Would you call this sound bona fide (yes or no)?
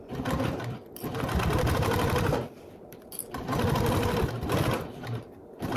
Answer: no